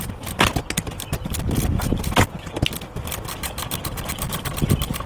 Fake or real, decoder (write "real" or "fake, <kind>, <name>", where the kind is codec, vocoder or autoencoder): real